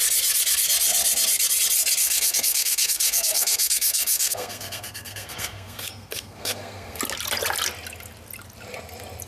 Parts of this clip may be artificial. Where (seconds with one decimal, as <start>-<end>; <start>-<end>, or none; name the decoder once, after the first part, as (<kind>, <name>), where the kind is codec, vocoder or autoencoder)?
2.0-7.0 (codec, SNAC)